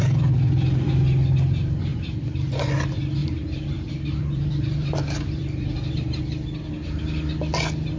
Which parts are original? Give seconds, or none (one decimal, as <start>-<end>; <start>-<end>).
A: 0.0-1.9; 2.6-3.2; 6.2-8.0